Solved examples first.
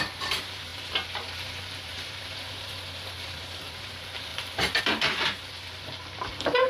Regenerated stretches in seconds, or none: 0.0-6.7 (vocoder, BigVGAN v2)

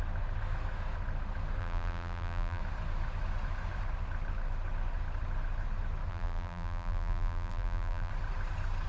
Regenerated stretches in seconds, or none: 1.6-2.6 (vocoder, BigVGAN v2); 6.1-8.1

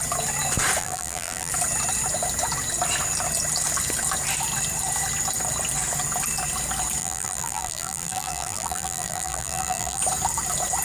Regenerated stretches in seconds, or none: 0.8-1.5 (vocoder, BigVGAN v2); 7.0-10.0